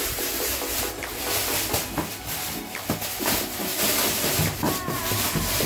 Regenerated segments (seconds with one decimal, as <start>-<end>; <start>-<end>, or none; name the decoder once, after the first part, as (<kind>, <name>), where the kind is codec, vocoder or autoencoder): 0.0-1.1 (vocoder, BigVGAN v2); 3.6-5.7